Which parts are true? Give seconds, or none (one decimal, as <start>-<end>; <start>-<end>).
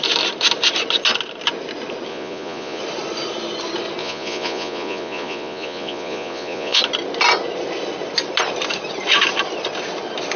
0.0-2.1; 2.8-4.0; 6.8-10.4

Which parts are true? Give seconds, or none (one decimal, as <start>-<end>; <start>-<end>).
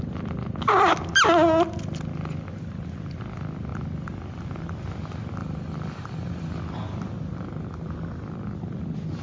0.0-5.4; 6.6-9.2